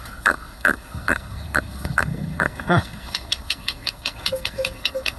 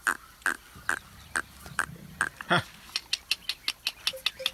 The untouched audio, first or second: second